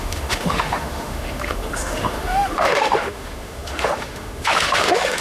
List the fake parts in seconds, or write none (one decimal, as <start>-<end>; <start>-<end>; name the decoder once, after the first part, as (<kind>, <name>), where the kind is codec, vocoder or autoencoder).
0.0-5.2 (autoencoder, DAC-VAE)